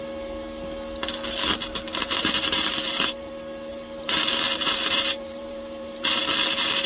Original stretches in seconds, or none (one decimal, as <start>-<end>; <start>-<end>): 0.0-1.9; 3.3-3.7; 6.2-6.9